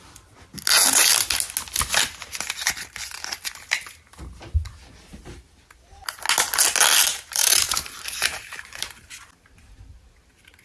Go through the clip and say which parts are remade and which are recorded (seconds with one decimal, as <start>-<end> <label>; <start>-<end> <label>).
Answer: 0.0-7.1 recorded; 7.1-9.1 remade; 9.1-10.6 recorded